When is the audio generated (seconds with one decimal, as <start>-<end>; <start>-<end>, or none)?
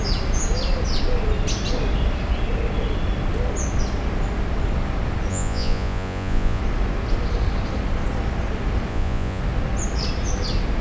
5.3-6.6; 8.9-9.4